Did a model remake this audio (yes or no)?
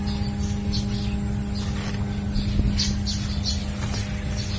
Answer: no